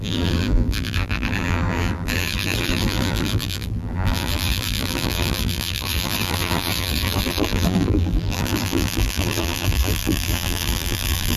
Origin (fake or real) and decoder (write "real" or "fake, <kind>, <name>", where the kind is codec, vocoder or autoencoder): fake, vocoder, BigVGAN v2